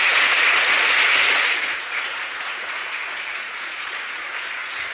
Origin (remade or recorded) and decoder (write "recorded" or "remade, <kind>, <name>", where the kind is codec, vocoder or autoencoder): remade, vocoder, Vocos